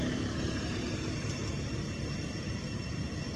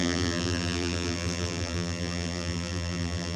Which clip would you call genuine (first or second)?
first